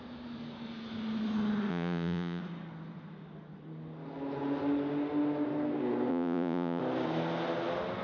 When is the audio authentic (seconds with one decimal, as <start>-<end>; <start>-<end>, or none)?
0.0-1.7; 2.4-6.1; 6.8-8.0